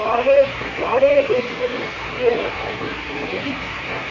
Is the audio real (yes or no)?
no